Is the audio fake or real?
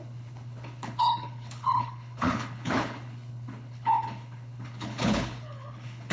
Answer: fake